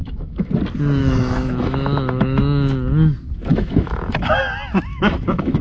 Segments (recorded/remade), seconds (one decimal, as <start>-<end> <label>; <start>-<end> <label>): 0.0-0.5 remade; 0.5-1.0 recorded; 1.0-2.4 remade; 2.4-3.5 recorded; 3.5-4.4 remade; 4.4-4.9 recorded; 4.9-5.6 remade